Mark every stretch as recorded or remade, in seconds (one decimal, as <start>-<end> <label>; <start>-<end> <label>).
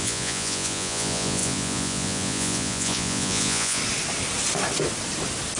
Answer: 0.0-3.8 remade; 3.8-5.6 recorded